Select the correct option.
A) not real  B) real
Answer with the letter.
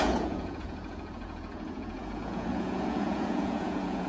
A